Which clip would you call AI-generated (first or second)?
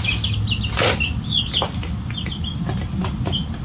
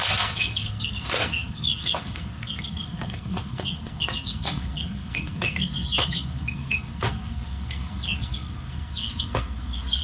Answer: second